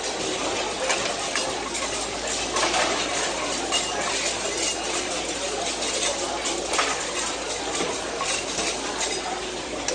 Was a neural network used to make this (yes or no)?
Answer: no